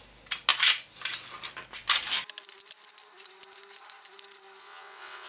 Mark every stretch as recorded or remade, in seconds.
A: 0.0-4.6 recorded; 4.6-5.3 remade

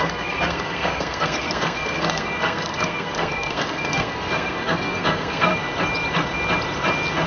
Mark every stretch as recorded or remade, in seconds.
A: 0.0-5.5 remade; 5.5-7.3 recorded

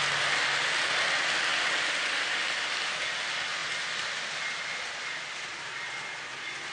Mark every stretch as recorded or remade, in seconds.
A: 0.0-6.7 recorded